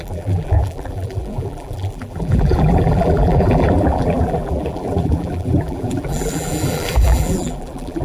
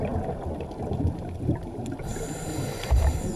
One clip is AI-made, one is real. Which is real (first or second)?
second